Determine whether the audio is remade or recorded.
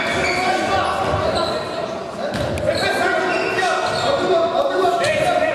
recorded